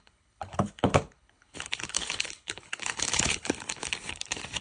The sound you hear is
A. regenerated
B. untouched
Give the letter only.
A